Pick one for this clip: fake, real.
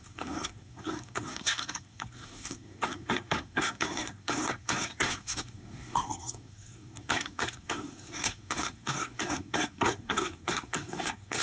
fake